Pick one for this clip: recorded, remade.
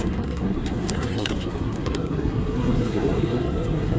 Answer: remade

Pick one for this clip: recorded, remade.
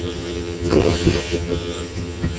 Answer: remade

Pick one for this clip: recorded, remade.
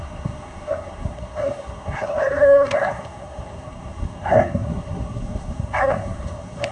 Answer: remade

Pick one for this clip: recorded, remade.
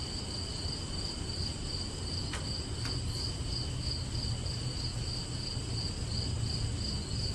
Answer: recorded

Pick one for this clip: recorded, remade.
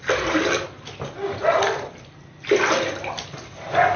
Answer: recorded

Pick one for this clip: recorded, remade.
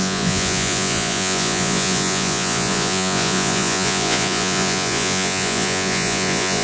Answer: remade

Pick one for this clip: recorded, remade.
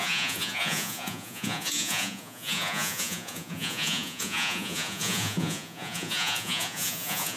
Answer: remade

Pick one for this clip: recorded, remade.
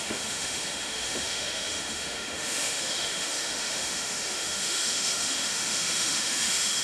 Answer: remade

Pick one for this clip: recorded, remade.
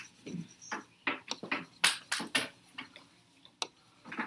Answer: recorded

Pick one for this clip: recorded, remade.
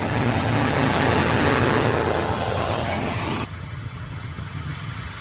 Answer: remade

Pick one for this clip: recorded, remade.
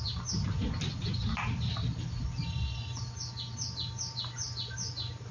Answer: recorded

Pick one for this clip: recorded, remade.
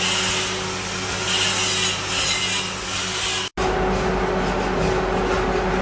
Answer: recorded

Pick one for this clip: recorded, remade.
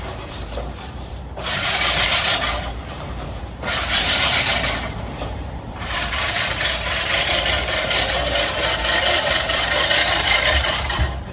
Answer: remade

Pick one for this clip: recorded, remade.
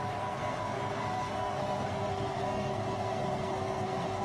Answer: remade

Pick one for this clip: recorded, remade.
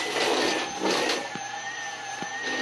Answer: recorded